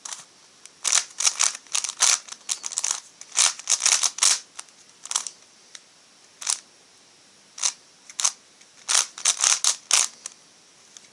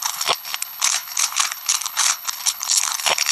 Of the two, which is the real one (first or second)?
first